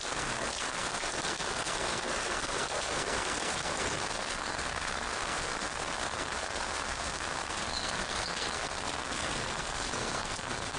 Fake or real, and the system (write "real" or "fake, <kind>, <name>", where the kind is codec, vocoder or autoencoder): fake, codec, SNAC